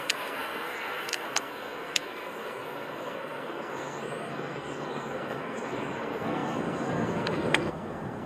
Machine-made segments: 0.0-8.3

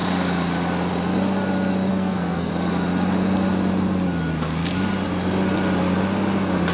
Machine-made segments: 1.9-2.5

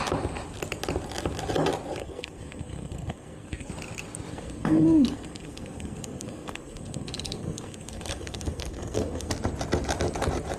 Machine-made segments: 2.0-3.7; 4.3-9.3

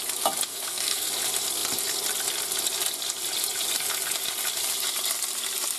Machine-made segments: 0.5-1.1

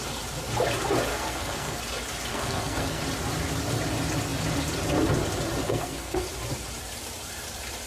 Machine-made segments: 1.1-1.8; 2.3-3.0; 5.6-6.3